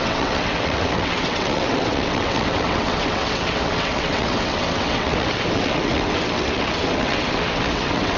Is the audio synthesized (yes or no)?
yes